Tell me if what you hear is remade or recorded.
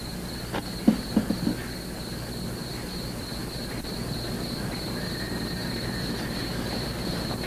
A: recorded